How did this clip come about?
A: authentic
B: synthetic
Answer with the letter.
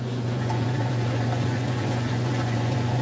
B